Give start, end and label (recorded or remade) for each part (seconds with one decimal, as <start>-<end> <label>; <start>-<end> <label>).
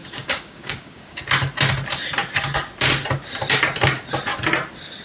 0.0-1.2 remade; 1.2-5.0 recorded